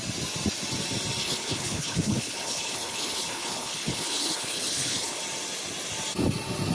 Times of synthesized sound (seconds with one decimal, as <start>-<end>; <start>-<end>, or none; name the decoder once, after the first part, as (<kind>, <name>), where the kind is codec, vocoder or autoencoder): 1.2-5.2 (codec, HILCodec)